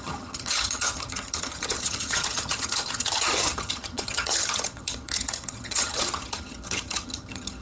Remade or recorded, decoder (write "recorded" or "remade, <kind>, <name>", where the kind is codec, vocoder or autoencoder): remade, vocoder, HiFi-GAN